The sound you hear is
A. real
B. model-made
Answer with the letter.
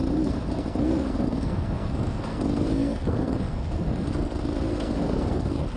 B